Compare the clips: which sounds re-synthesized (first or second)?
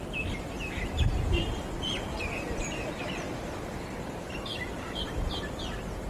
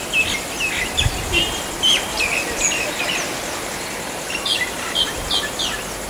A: first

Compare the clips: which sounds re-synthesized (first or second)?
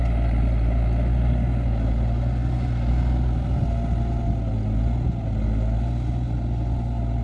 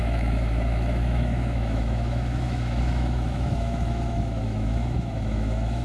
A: second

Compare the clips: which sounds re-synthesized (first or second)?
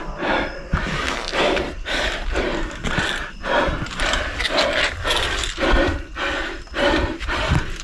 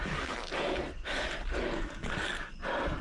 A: first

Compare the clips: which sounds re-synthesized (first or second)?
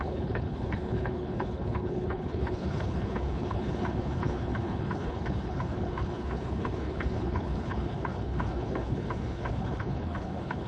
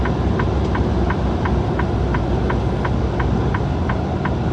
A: first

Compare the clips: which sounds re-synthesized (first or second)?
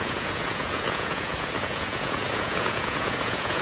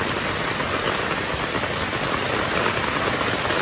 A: first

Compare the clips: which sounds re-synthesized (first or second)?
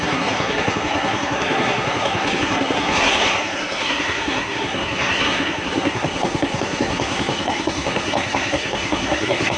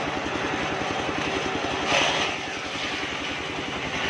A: first